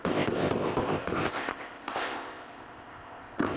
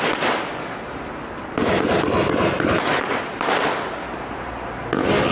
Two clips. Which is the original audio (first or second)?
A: second